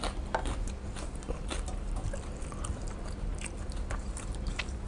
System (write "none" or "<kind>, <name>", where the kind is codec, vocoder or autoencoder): none